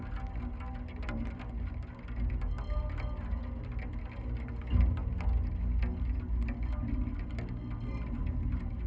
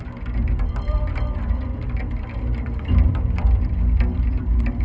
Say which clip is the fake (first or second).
second